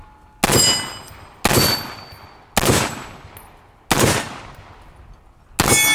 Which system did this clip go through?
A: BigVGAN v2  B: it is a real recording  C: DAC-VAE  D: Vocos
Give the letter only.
B